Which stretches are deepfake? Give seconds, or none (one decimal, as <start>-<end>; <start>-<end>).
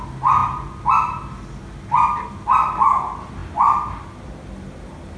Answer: none